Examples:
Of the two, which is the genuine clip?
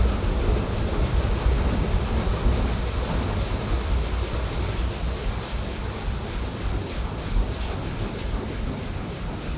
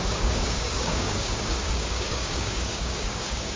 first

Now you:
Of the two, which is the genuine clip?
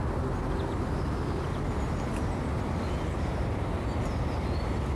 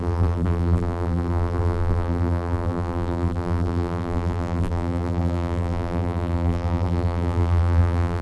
first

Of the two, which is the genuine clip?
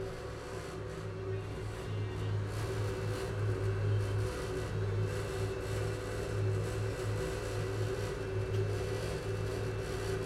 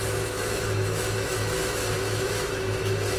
first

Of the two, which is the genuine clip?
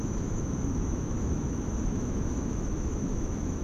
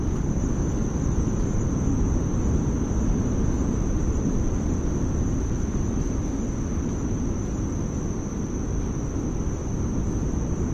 second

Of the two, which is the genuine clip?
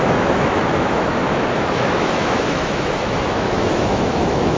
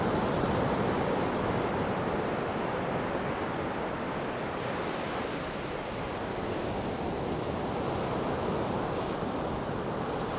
second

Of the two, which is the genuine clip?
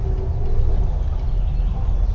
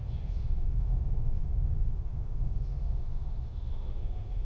first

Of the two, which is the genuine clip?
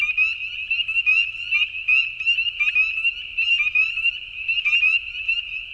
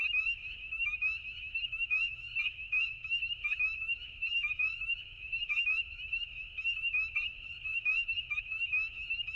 first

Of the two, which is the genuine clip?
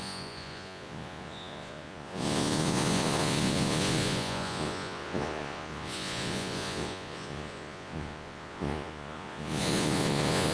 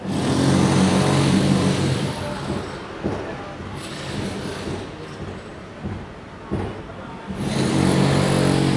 second